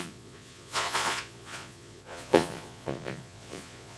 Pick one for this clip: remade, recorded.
remade